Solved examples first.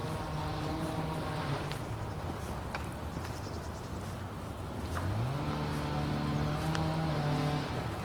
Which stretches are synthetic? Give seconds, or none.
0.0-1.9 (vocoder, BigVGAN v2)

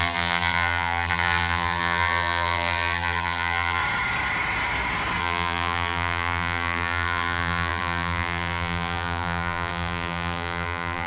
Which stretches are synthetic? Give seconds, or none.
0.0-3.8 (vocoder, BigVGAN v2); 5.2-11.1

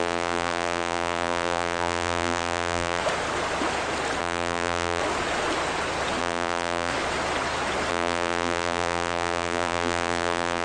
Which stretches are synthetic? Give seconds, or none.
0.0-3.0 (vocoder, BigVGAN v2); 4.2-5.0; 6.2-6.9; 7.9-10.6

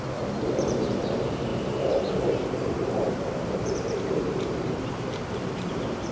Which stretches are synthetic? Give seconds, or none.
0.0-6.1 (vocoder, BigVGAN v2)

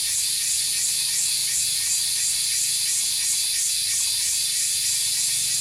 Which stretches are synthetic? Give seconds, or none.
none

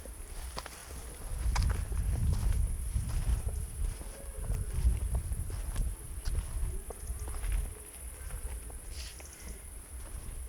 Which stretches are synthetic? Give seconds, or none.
3.3-6.2 (vocoder, BigVGAN v2)